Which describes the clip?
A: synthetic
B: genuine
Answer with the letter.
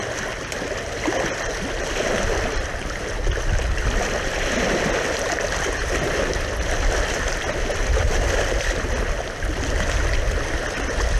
B